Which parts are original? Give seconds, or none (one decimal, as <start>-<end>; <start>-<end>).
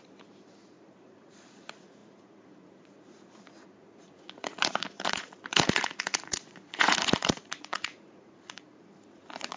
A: none